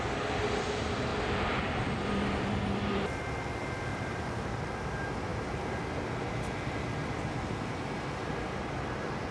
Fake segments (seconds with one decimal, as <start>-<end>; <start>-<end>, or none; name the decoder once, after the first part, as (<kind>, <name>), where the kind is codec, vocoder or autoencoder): 1.1-1.6 (vocoder, BigVGAN v2); 3.9-4.8; 5.3-5.8